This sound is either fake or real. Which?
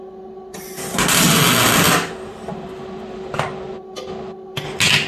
real